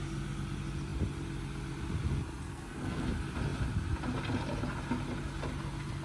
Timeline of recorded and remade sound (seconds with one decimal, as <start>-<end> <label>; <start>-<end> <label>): 0.0-2.5 recorded; 2.5-3.1 remade; 3.1-6.0 recorded